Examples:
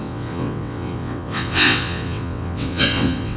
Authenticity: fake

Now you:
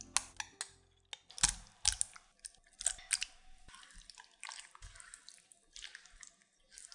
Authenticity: real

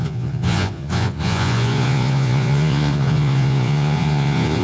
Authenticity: fake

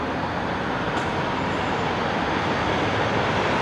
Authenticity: real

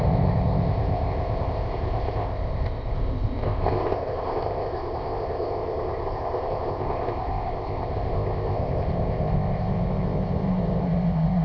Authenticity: fake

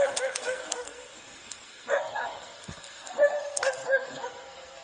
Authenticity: fake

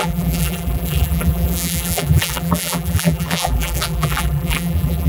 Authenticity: fake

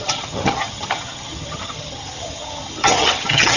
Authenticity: fake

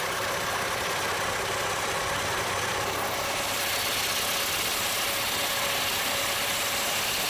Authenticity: real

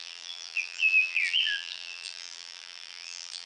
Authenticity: fake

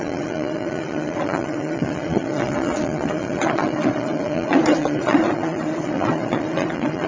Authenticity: fake